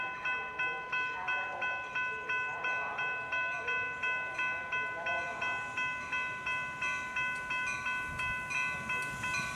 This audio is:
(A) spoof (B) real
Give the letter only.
B